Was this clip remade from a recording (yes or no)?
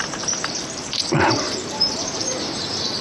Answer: yes